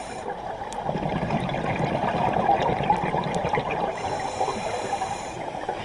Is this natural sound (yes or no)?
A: no